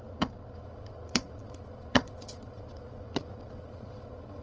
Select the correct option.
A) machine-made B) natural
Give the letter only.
A